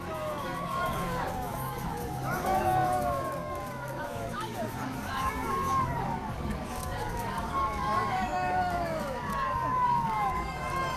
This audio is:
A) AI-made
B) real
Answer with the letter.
A